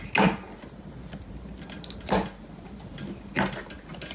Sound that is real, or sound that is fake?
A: real